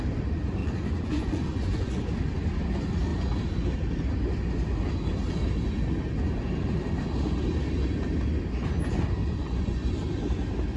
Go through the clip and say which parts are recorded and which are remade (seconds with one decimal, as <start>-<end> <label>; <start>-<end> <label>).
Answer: 0.0-0.6 recorded; 0.6-2.0 remade; 2.0-9.2 recorded; 9.2-9.9 remade; 9.9-10.8 recorded